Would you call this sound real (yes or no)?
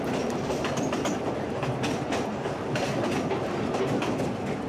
yes